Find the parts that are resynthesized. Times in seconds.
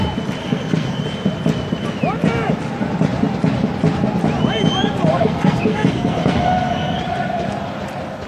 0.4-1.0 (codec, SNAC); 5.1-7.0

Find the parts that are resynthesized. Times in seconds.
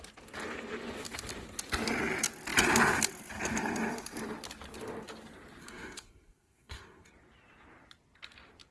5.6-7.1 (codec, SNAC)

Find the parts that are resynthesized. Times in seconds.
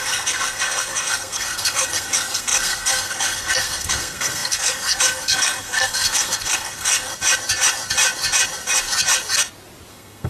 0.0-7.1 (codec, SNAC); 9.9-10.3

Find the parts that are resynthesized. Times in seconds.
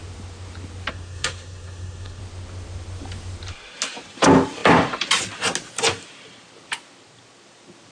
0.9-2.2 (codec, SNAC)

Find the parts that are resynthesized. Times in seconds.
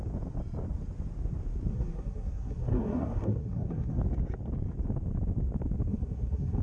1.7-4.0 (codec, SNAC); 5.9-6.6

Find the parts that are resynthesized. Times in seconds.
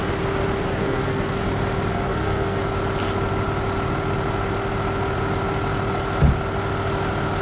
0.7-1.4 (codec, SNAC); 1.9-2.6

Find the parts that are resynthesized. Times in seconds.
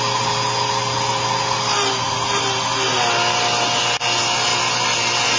none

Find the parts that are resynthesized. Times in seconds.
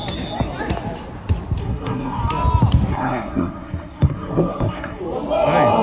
1.6-2.2 (codec, SNAC); 2.9-5.0